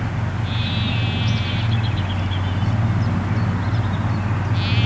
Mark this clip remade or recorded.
recorded